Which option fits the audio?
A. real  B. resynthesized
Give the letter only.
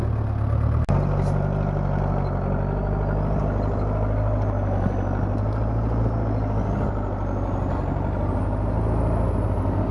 A